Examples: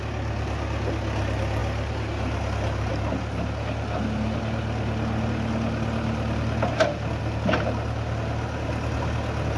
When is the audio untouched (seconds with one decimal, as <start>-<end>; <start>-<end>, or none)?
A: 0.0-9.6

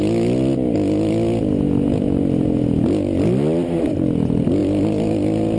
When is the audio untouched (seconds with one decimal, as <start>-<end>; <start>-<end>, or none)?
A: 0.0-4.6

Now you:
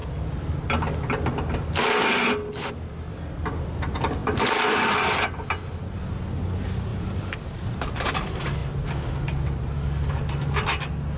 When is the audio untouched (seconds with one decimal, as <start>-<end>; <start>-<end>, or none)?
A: 0.0-6.9; 8.1-11.2